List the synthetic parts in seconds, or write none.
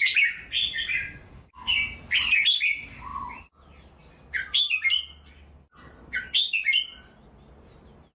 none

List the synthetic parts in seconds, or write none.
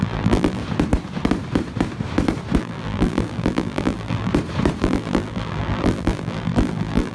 0.0-0.6 (vocoder, BigVGAN v2); 2.6-4.3; 4.8-7.1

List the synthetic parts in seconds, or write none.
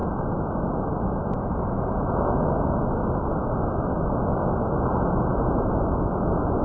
none